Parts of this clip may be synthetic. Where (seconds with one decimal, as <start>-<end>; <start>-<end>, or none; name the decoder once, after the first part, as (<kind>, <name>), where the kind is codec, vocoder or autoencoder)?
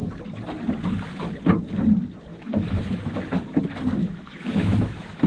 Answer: 2.3-3.6 (autoencoder, DAC-VAE); 4.0-5.3